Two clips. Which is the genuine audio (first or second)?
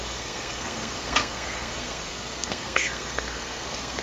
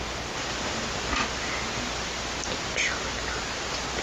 second